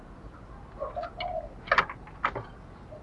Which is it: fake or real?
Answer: real